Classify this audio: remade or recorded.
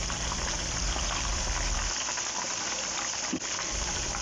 recorded